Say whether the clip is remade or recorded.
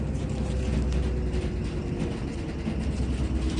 recorded